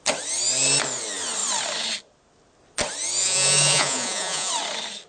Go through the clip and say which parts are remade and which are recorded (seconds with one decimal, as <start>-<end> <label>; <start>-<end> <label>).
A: 0.0-3.2 recorded; 3.2-4.5 remade; 4.5-5.1 recorded